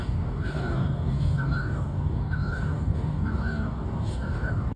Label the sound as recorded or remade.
remade